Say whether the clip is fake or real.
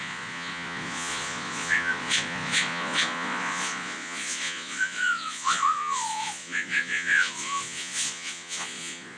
fake